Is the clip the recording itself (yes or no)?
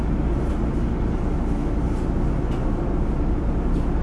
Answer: yes